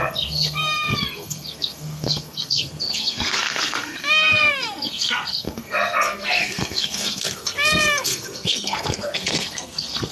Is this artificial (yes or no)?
yes